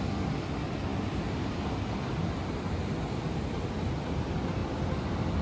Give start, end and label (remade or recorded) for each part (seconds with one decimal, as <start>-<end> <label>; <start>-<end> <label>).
0.0-5.4 recorded